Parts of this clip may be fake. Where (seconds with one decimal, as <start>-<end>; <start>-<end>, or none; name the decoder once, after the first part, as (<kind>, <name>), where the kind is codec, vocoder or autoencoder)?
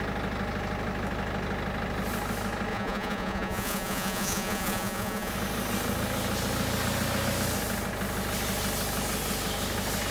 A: 2.7-5.3 (vocoder, Vocos)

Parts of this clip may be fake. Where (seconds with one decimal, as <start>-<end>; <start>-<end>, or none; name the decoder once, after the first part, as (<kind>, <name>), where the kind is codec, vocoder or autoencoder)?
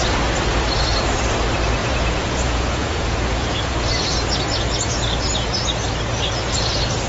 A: 1.8-3.7 (vocoder, Vocos)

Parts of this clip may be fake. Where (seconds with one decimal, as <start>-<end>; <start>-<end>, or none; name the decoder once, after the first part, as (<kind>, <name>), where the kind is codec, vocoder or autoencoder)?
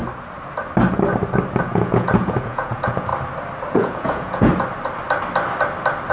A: 1.6-3.1 (vocoder, Vocos); 3.7-4.5